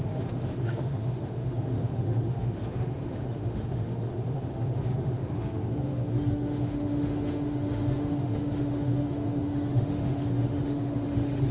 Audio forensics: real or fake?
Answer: fake